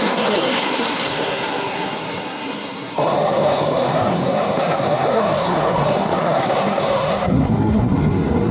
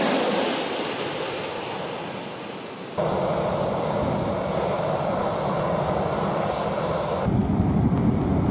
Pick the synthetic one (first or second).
first